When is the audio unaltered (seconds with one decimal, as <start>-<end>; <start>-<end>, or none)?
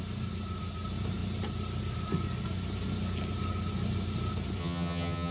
0.0-4.6